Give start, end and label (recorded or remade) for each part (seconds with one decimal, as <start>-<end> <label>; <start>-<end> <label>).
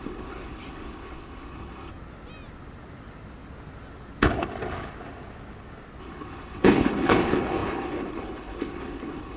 0.0-1.9 remade; 1.9-6.0 recorded; 6.0-9.4 remade